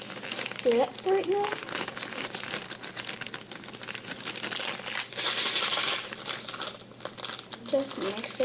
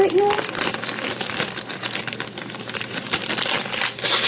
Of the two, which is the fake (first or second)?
second